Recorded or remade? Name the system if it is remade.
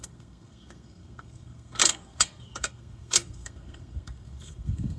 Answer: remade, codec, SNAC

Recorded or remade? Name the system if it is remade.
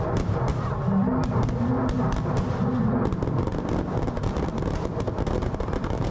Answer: recorded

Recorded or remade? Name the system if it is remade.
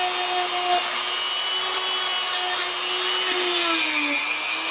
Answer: recorded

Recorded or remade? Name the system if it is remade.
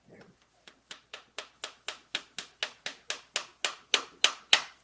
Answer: recorded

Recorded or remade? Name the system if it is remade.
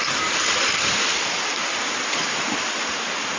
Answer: recorded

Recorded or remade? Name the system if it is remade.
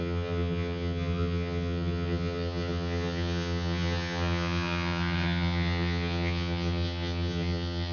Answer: remade, vocoder, HiFi-GAN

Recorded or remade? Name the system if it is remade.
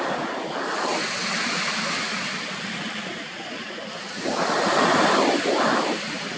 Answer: recorded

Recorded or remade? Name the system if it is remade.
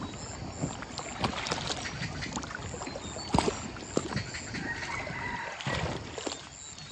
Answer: recorded